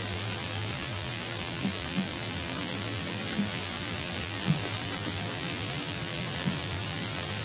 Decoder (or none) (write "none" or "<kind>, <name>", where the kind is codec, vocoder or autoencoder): vocoder, BigVGAN v2